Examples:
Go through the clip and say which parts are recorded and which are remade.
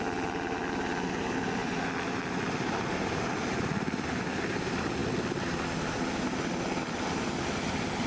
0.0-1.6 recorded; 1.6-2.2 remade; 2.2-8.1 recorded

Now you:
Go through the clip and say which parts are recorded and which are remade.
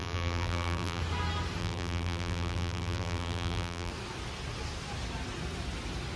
0.0-1.0 remade; 1.0-1.6 recorded; 1.6-3.9 remade; 3.9-6.2 recorded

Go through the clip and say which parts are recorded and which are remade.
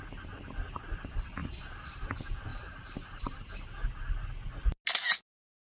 0.0-1.4 recorded; 1.4-2.1 remade; 2.1-2.5 recorded; 2.5-3.5 remade; 3.5-5.8 recorded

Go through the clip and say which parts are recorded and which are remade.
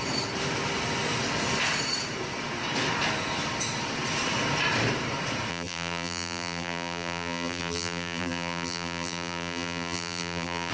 0.0-5.5 recorded; 5.5-10.7 remade